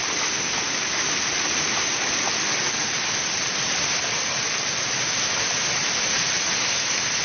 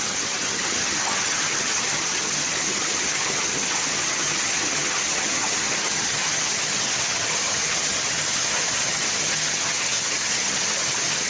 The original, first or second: first